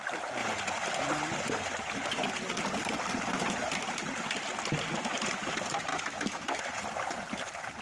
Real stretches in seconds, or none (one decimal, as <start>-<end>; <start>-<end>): 0.0-5.9; 6.6-7.8